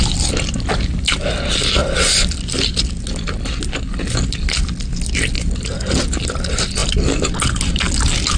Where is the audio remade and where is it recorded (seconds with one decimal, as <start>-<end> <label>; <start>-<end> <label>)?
0.0-8.4 recorded